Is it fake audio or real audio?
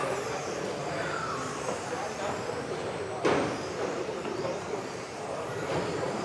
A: fake